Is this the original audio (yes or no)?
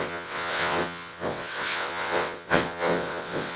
no